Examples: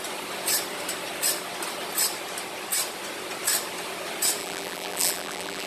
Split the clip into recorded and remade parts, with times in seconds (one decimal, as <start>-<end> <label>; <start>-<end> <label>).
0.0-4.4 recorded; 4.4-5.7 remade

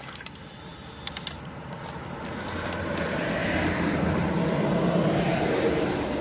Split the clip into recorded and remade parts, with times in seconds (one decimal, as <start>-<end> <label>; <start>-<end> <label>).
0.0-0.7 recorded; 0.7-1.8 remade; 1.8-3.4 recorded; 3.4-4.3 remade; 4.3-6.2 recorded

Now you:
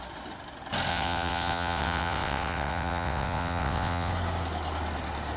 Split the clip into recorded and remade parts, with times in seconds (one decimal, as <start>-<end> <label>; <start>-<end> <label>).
0.0-0.9 recorded; 0.9-4.1 remade; 4.1-5.4 recorded